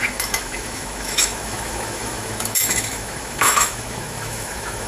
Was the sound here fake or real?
fake